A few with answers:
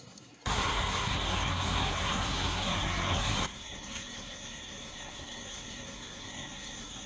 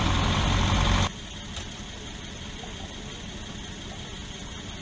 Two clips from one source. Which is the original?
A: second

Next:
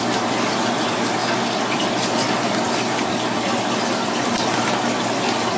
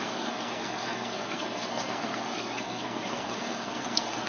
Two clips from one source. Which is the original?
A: first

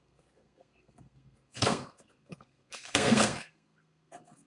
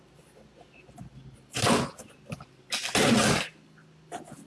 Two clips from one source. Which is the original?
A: second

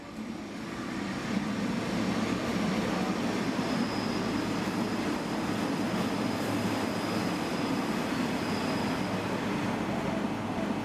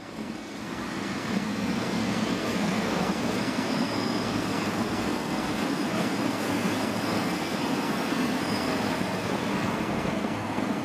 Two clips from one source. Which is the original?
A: first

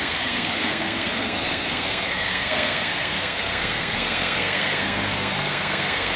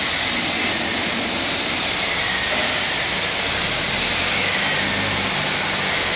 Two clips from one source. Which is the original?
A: second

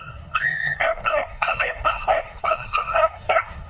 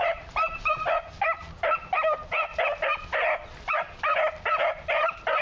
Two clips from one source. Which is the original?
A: second